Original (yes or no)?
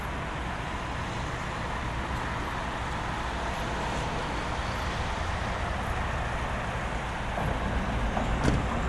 yes